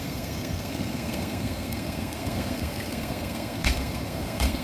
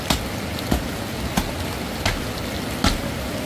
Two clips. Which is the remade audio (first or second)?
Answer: first